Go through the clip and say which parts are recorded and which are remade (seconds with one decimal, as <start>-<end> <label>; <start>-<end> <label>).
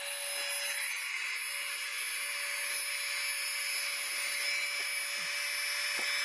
0.0-6.2 recorded